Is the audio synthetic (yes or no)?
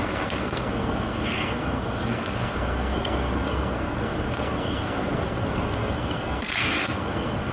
yes